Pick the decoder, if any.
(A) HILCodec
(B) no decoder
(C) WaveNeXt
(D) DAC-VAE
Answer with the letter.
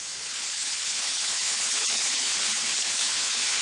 A